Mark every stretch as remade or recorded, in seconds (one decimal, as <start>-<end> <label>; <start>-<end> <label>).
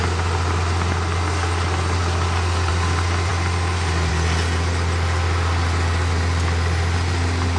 0.0-7.6 recorded